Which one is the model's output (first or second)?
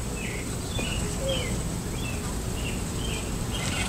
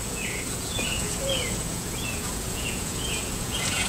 second